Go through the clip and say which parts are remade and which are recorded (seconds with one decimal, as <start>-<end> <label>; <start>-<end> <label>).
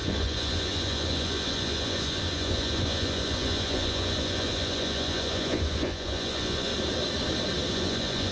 0.0-6.7 remade; 6.7-7.7 recorded; 7.7-8.3 remade